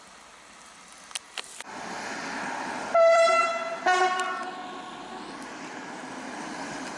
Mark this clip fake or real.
real